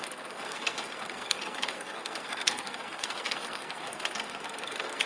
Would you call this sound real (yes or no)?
no